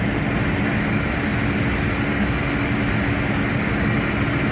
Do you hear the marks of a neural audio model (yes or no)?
no